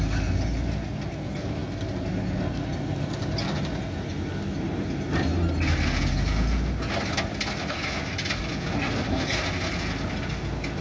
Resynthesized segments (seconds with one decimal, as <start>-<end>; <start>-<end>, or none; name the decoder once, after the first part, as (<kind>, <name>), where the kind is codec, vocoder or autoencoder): none